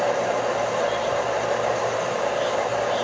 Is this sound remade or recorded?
recorded